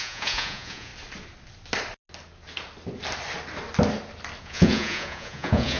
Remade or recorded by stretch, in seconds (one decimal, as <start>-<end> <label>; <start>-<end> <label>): 0.0-0.9 remade; 0.9-4.4 recorded; 4.4-5.8 remade